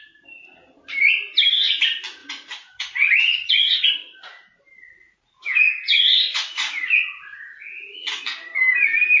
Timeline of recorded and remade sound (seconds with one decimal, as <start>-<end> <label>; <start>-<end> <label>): 0.0-2.2 recorded; 2.2-3.9 remade; 3.9-5.0 recorded; 5.0-8.2 remade; 8.2-9.2 recorded